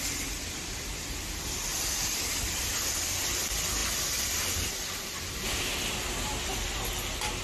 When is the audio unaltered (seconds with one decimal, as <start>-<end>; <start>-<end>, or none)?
0.0-1.7; 2.7-3.8; 6.9-7.4